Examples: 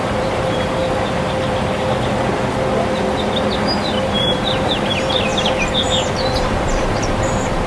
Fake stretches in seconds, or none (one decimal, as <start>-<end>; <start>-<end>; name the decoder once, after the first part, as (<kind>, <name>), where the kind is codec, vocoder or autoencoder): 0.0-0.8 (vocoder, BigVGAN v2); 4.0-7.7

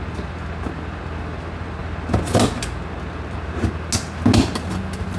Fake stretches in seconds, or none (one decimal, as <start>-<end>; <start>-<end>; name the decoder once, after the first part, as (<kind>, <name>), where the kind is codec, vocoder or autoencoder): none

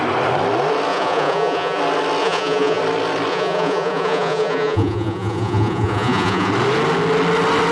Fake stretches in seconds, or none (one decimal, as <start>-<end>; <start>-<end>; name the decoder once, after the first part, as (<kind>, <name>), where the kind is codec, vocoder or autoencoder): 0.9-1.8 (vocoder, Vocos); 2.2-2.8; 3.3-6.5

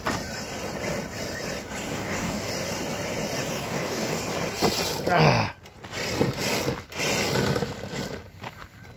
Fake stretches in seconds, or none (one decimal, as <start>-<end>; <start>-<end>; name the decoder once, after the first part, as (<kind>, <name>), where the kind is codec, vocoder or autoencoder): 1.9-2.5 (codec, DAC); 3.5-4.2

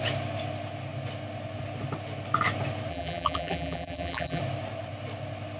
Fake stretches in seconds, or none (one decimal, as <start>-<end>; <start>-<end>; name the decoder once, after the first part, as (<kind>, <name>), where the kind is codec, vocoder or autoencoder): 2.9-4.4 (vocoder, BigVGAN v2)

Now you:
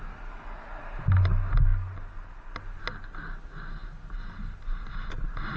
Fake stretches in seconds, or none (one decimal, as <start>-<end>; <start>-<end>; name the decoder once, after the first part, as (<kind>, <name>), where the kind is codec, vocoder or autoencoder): none

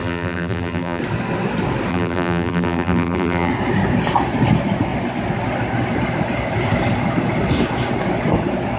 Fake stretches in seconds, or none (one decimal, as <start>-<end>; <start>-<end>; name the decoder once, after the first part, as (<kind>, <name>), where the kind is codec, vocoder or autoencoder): 0.0-1.0 (vocoder, BigVGAN v2); 1.9-3.5